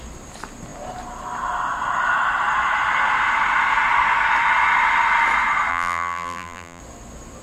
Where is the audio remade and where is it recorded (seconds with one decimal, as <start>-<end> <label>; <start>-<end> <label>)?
0.0-5.7 recorded; 5.7-6.8 remade; 6.8-7.4 recorded